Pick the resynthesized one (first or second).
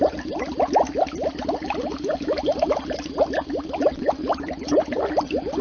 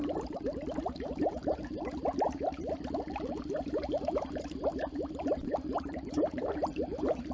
second